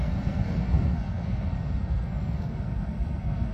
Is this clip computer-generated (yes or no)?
yes